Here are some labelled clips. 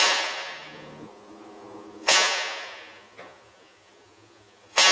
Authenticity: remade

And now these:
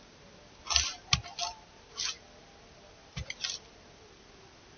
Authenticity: recorded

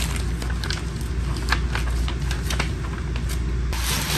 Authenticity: recorded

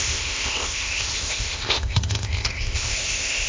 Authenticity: remade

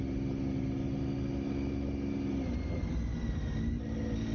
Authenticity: recorded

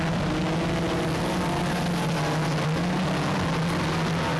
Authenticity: recorded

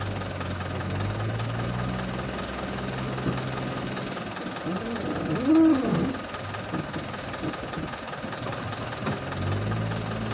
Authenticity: recorded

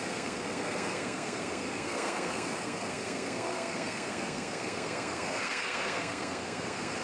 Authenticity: remade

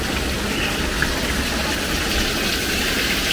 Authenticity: recorded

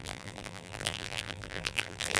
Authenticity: remade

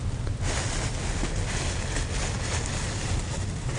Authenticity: recorded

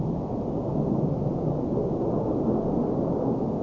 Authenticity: recorded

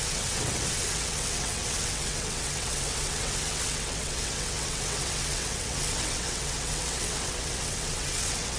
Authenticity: remade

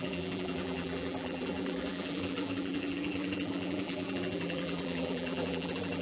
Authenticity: remade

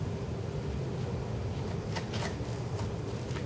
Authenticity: recorded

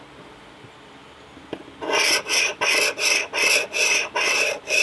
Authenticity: recorded